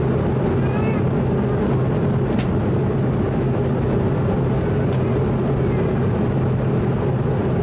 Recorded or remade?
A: recorded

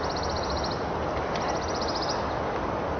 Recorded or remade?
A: recorded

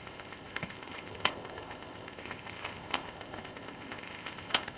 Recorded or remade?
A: remade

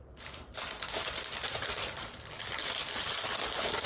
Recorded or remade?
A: recorded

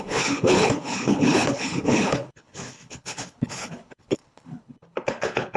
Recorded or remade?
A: remade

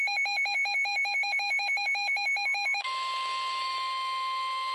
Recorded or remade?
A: remade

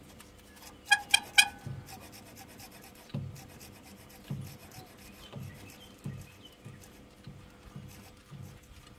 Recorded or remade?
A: recorded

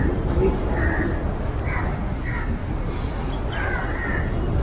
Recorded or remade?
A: recorded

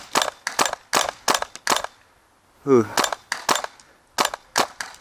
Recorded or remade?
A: recorded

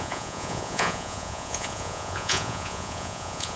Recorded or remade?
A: remade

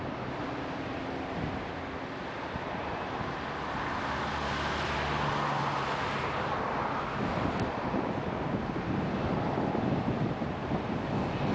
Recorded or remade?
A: recorded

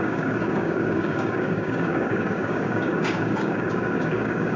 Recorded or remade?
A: remade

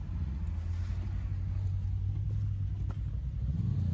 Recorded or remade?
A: recorded